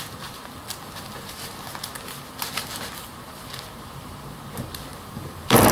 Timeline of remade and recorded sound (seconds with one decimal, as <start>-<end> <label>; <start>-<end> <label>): 0.0-4.9 recorded; 4.9-5.7 remade

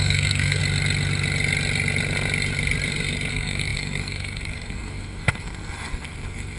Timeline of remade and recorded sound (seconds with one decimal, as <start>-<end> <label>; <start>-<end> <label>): 0.0-0.6 remade; 0.6-3.3 recorded; 3.3-6.6 remade

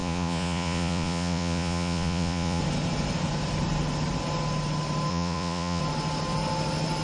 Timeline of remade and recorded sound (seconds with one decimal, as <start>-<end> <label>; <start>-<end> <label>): 0.0-2.6 remade; 2.6-5.1 recorded; 5.1-5.8 remade; 5.8-7.0 recorded

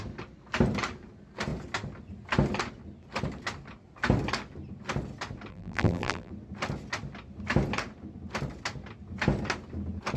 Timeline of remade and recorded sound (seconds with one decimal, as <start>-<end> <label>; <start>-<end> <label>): 0.0-5.5 recorded; 5.5-6.3 remade; 6.3-10.2 recorded

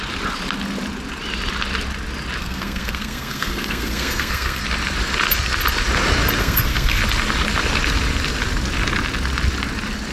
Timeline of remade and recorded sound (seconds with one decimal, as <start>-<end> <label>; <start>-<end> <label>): 0.0-2.4 recorded; 2.4-4.6 remade; 4.6-6.4 recorded; 6.4-7.0 remade; 7.0-10.1 recorded

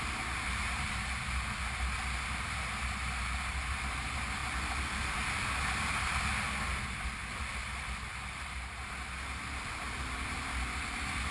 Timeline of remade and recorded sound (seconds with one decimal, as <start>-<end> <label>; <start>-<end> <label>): 0.0-11.3 recorded

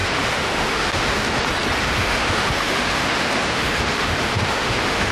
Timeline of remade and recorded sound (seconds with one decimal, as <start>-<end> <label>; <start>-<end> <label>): 0.0-1.4 remade; 1.4-1.8 recorded; 1.8-5.1 remade